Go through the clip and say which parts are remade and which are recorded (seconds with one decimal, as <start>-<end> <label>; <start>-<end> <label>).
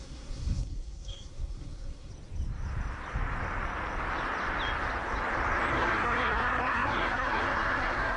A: 0.0-2.1 remade; 2.1-5.7 recorded; 5.7-8.2 remade